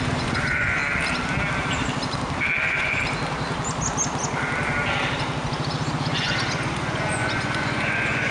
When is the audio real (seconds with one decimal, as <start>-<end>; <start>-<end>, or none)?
0.8-2.6; 3.0-5.9